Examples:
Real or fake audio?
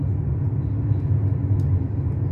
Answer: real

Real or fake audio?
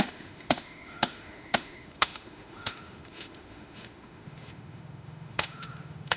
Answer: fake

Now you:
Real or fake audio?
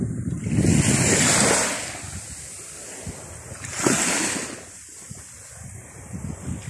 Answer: real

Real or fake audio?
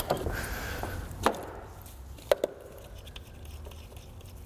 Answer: real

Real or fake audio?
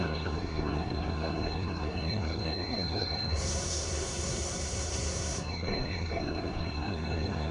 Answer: fake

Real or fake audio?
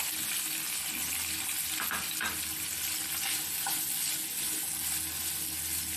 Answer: real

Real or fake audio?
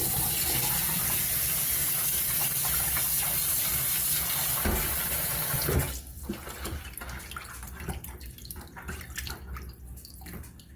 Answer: real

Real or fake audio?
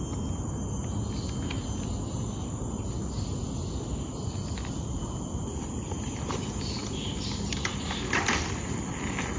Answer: real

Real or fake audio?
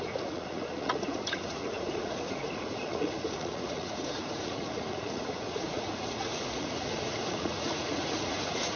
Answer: fake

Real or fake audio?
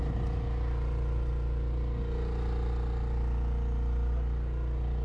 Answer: real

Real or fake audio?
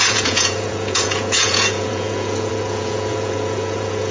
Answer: fake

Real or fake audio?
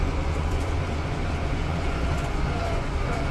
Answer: fake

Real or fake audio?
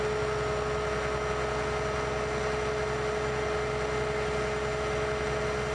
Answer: real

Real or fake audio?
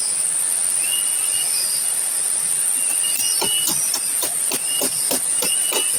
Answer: real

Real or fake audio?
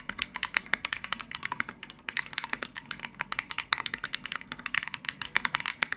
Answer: fake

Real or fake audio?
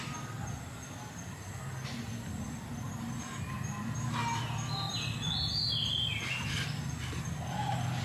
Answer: real